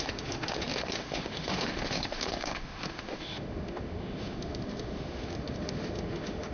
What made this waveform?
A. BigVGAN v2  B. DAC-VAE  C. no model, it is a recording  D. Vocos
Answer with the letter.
B